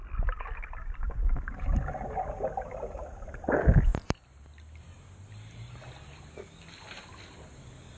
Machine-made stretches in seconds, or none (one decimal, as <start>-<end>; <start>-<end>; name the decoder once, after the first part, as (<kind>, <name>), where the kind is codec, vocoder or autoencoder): none